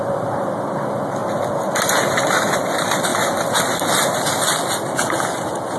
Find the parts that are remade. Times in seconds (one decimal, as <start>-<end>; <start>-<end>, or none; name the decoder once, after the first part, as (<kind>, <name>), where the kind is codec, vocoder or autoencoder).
none